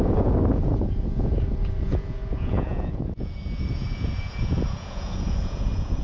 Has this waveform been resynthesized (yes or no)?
yes